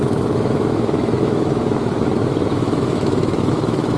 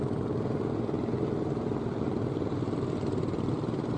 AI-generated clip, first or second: first